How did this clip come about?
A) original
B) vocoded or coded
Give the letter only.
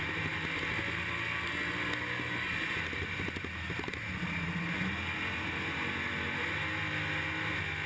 A